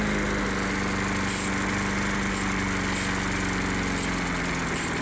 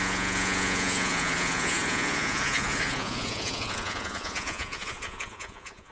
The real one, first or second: first